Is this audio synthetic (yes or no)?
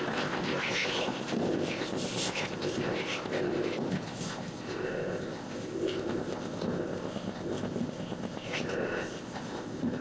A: yes